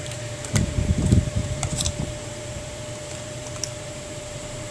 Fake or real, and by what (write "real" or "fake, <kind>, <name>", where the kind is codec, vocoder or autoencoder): fake, vocoder, BigVGAN v2